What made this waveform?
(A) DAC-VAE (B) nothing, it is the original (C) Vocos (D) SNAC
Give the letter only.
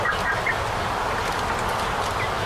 B